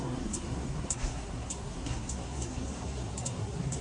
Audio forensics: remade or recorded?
remade